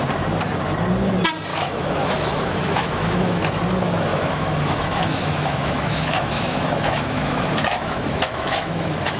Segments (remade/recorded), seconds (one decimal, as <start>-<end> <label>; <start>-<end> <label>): 0.0-1.5 recorded; 1.5-3.4 remade; 3.4-4.1 recorded; 4.1-9.2 remade